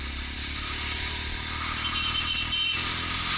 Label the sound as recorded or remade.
recorded